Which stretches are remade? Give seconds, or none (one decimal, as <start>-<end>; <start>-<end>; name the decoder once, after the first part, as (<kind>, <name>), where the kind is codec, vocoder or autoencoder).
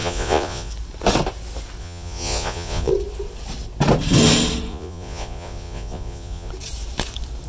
0.0-0.7 (vocoder, Vocos); 1.8-2.9; 4.7-6.5